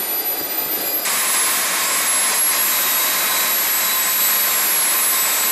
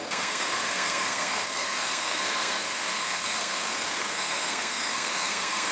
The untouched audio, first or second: first